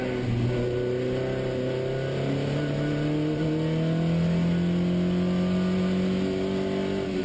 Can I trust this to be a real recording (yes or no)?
yes